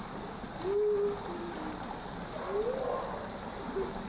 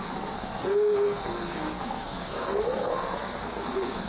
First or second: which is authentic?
first